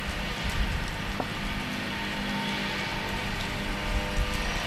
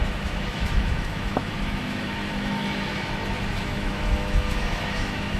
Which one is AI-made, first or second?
second